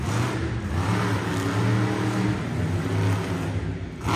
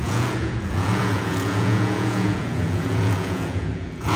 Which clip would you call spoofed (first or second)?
second